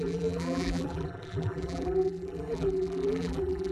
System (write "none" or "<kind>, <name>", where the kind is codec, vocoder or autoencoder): vocoder, BigVGAN v2